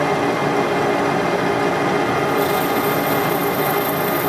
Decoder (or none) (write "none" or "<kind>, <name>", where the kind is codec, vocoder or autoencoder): none